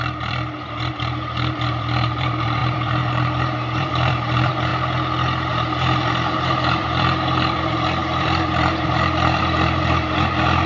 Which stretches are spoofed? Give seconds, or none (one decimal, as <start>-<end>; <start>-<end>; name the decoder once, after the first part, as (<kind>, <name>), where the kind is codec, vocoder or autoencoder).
0.0-4.7 (vocoder, BigVGAN v2); 5.5-10.7